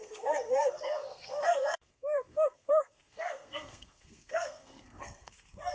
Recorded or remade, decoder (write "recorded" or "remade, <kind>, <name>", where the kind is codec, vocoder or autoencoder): remade, codec, SNAC